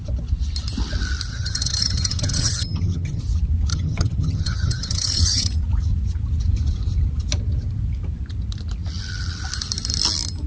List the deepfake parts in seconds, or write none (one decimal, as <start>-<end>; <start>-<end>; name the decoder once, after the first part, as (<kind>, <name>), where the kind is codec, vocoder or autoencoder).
1.3-3.2 (vocoder, HiFi-GAN); 3.7-5.5